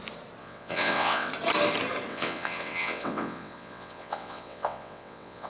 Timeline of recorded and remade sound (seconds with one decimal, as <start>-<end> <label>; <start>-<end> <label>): 0.0-0.4 recorded; 0.4-1.3 remade; 1.3-2.1 recorded; 2.1-5.5 remade